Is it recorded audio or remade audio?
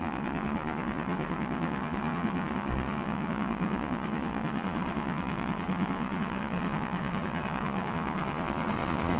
remade